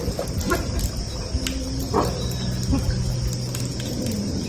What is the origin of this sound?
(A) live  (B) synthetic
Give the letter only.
A